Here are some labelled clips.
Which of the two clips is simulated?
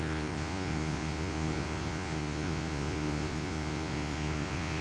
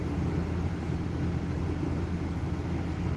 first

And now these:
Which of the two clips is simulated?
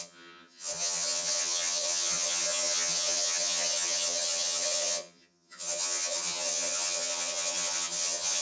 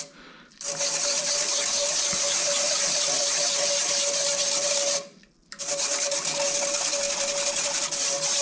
first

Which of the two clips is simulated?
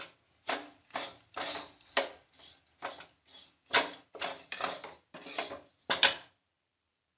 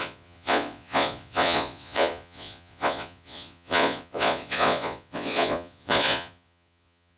second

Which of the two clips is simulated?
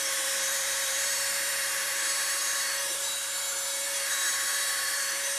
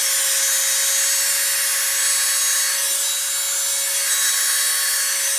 first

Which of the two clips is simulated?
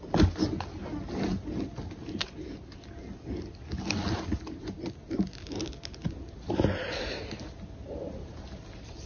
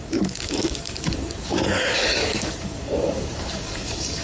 second